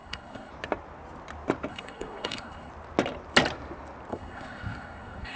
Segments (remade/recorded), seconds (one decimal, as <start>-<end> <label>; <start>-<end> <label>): 0.0-0.5 remade; 0.5-1.7 recorded; 1.7-2.7 remade; 2.7-4.1 recorded; 4.1-5.4 remade